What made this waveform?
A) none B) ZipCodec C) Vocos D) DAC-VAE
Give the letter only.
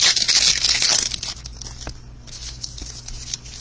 A